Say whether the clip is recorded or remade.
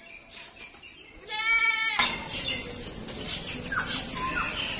recorded